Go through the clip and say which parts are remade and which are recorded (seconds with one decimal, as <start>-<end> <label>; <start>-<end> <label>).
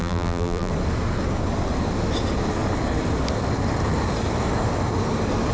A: 0.0-0.7 remade; 0.7-5.5 recorded